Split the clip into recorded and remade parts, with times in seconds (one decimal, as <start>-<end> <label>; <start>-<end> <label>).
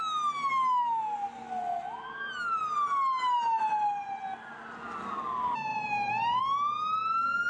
0.0-5.7 recorded; 5.7-6.4 remade; 6.4-7.5 recorded